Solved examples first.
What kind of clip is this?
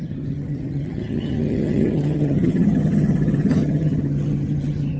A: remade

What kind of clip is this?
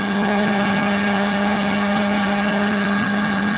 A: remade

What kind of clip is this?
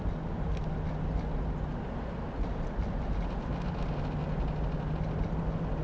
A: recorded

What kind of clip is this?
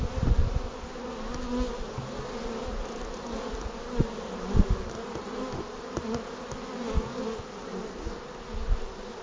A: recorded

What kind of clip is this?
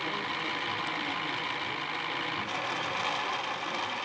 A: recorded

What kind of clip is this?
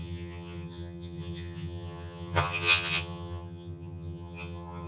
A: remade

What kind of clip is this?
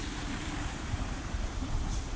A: recorded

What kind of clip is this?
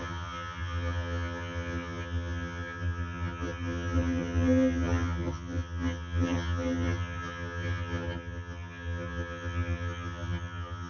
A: remade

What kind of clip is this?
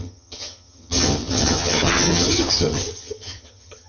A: remade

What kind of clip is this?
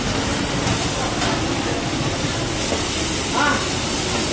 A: recorded